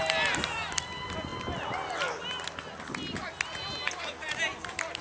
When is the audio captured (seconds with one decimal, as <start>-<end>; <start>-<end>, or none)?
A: 0.0-5.0